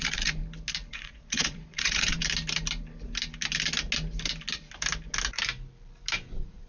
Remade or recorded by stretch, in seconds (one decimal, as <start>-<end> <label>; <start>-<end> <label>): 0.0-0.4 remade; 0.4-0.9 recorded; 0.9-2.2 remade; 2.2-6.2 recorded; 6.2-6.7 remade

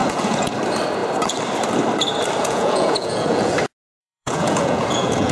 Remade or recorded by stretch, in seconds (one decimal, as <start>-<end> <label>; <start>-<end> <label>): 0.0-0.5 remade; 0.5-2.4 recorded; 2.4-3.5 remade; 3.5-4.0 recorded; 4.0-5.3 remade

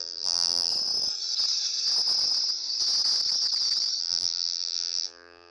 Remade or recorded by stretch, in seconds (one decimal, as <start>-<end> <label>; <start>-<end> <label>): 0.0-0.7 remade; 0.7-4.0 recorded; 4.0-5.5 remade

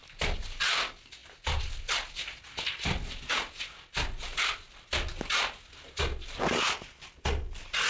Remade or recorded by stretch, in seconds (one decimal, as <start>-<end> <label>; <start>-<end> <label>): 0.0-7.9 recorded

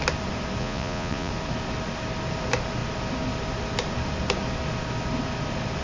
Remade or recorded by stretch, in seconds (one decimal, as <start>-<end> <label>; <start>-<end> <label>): 0.0-0.6 recorded; 0.6-1.3 remade; 1.3-5.8 recorded